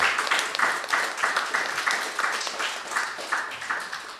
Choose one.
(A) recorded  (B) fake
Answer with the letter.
A